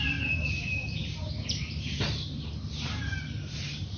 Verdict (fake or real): fake